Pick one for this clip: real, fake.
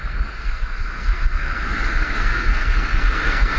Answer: fake